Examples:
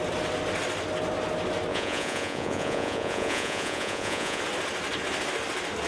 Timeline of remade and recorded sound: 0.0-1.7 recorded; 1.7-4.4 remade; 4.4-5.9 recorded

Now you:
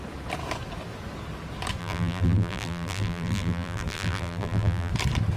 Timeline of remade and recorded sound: 0.0-1.8 recorded; 1.8-4.9 remade; 4.9-5.4 recorded

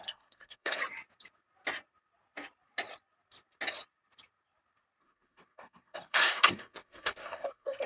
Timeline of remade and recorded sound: 0.0-0.8 remade; 0.8-5.0 recorded; 5.0-7.9 remade

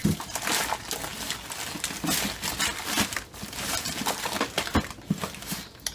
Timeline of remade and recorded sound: 0.0-5.9 recorded

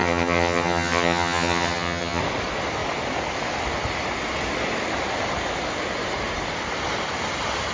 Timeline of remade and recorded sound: 0.0-2.2 remade; 2.2-7.7 recorded

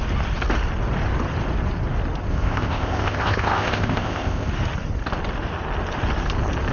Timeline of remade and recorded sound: 0.0-2.3 recorded; 2.3-4.5 remade; 4.5-6.7 recorded